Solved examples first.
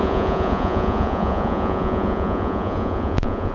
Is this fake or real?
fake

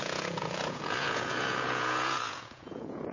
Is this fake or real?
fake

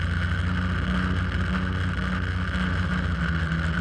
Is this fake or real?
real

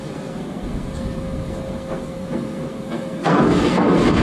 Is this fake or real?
fake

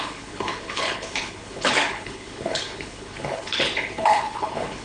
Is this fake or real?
fake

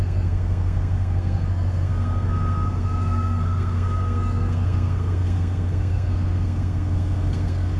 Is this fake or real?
fake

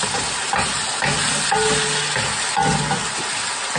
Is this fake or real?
real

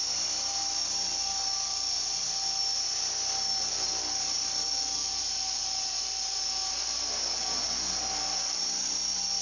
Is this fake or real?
real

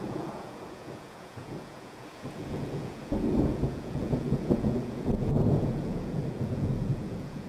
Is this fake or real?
fake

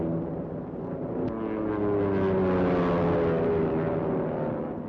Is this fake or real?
real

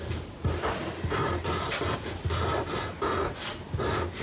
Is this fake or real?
real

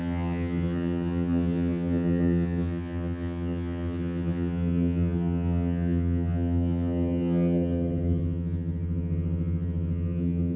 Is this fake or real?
fake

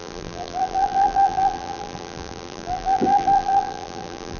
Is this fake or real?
fake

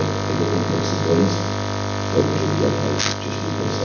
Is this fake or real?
real